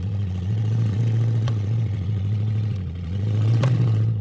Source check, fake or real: fake